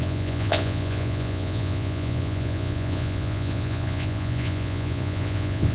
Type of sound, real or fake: fake